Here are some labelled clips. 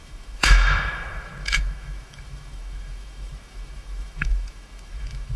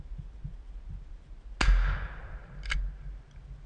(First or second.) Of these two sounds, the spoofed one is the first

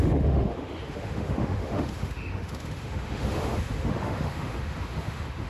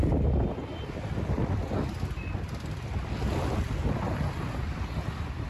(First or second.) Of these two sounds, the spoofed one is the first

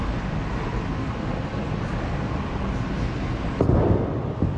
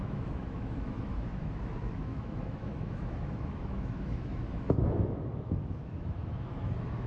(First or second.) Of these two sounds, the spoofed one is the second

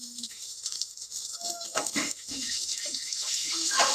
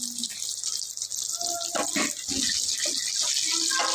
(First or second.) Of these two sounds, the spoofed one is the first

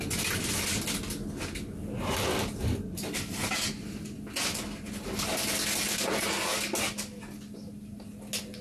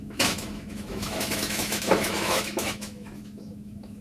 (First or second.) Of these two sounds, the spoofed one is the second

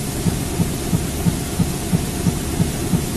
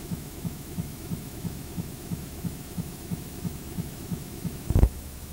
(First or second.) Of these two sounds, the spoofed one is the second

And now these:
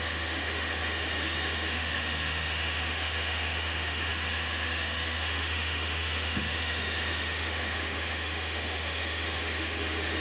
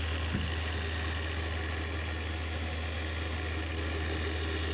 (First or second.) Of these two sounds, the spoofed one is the first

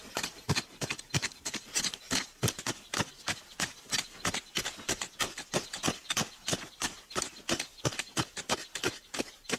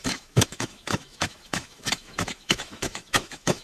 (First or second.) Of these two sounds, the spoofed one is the second